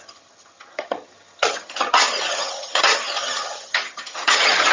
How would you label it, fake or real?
fake